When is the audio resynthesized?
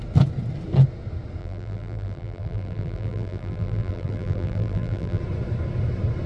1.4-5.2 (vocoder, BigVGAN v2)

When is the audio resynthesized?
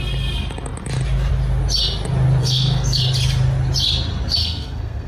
2.4-3.0 (codec, SNAC); 4.4-5.1